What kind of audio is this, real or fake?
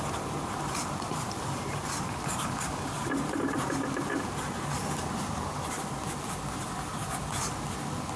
real